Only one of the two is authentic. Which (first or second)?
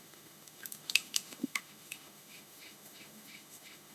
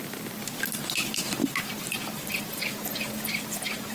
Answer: second